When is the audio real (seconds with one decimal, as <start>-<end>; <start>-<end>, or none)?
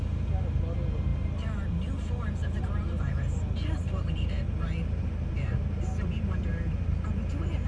0.0-7.7